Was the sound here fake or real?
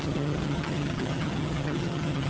fake